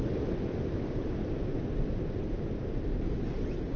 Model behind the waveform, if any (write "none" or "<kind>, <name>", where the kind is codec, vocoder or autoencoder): none